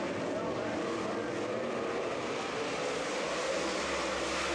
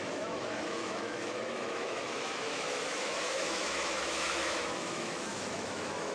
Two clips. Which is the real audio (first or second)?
first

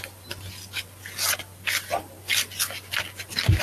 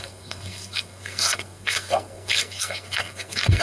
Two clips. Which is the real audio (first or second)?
first